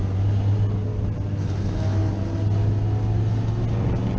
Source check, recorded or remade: recorded